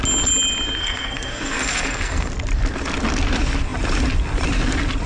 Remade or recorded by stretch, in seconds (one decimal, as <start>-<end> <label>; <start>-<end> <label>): 0.0-0.8 recorded; 0.8-2.3 remade; 2.3-5.1 recorded